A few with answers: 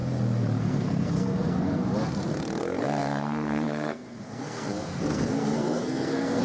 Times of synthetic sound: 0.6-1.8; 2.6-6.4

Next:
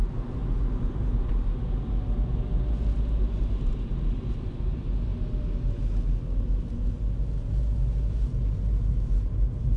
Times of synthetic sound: none

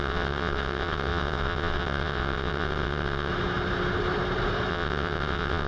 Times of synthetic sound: 0.0-3.3; 4.7-5.7

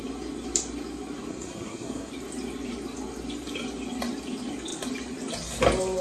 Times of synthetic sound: 1.3-2.1

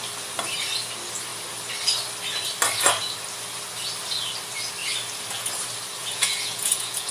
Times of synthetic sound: 6.0-7.1